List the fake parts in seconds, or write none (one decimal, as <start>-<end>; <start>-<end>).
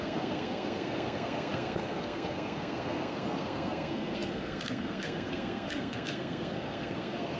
0.0-7.4